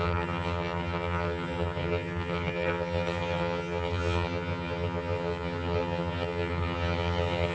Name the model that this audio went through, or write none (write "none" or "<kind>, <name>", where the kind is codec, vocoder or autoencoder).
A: vocoder, HiFi-GAN